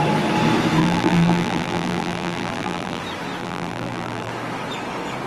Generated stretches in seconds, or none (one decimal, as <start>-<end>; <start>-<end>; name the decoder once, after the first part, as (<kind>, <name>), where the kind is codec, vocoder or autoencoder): 0.8-3.0 (vocoder, BigVGAN v2); 3.4-4.3